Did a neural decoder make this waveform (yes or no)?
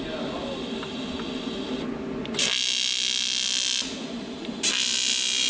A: no